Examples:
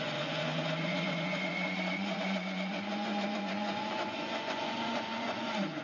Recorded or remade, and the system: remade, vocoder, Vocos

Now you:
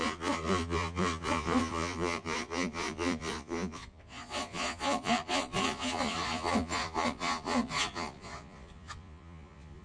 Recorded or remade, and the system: remade, vocoder, Vocos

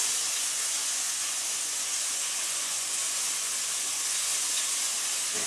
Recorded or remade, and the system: remade, vocoder, Vocos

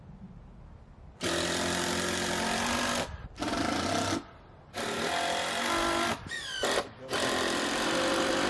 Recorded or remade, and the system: recorded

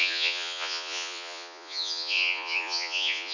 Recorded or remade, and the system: remade, vocoder, Vocos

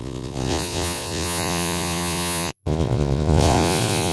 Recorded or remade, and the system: remade, vocoder, Vocos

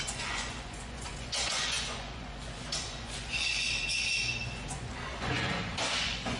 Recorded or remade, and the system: remade, vocoder, Vocos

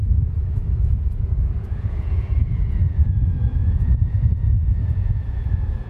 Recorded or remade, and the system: remade, vocoder, Vocos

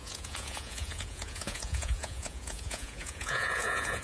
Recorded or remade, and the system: remade, vocoder, Vocos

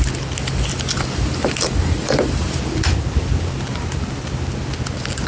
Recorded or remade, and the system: recorded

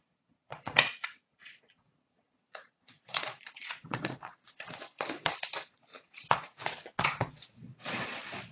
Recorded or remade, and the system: remade, vocoder, Vocos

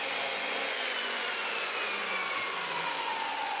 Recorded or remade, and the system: remade, vocoder, Vocos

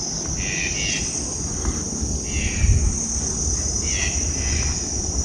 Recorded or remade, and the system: recorded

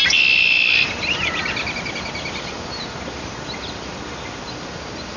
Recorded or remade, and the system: recorded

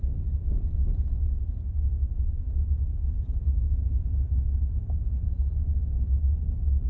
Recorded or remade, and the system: recorded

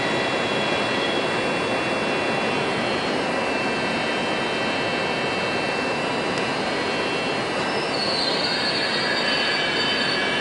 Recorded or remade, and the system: recorded